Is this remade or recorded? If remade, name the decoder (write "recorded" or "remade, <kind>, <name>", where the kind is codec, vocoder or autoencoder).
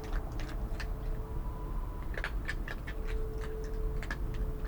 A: recorded